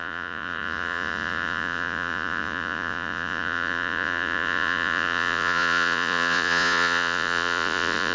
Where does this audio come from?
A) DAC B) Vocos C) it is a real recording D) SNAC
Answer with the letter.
B